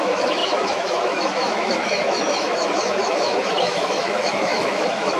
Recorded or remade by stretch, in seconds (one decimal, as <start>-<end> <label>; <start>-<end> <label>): 0.0-5.2 remade